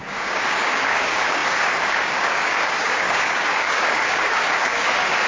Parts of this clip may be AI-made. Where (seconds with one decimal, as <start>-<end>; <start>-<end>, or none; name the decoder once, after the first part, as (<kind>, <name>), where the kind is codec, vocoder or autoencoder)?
0.0-5.3 (codec, DAC)